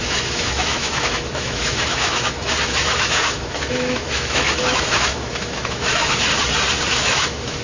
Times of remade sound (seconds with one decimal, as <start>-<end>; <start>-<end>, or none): 0.0-6.3; 6.9-7.6